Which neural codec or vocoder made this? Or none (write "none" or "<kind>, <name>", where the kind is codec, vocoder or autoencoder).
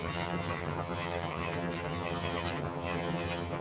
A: vocoder, HiFi-GAN